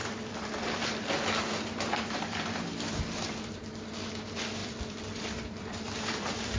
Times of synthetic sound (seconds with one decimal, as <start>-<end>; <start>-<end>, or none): 0.0-3.6; 4.6-6.6